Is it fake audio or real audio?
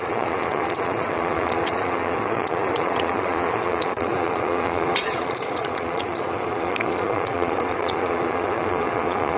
fake